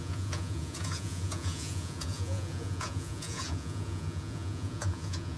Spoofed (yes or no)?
yes